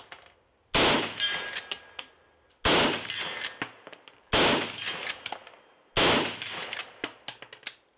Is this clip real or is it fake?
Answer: real